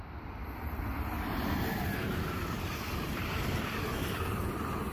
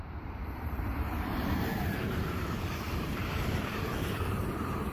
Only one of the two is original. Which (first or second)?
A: first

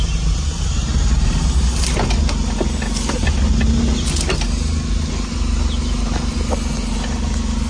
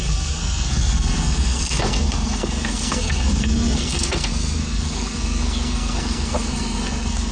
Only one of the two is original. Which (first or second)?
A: first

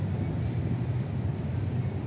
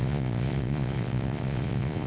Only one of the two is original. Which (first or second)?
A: first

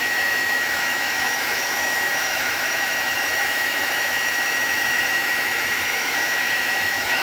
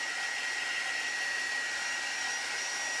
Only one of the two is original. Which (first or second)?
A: second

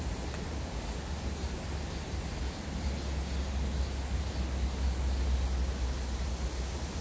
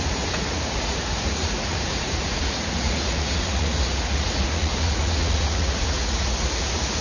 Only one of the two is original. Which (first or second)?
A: first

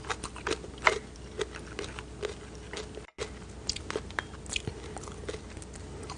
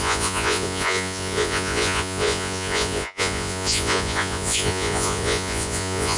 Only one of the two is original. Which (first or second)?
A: first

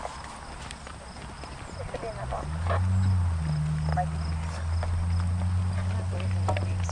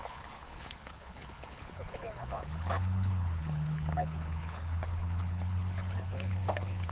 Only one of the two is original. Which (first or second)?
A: first